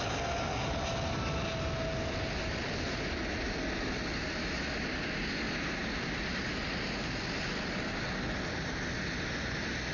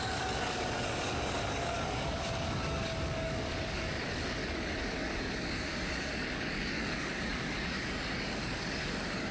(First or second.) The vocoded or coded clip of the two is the second